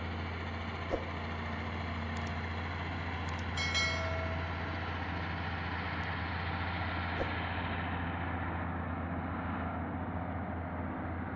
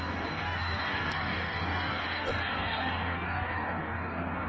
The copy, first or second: second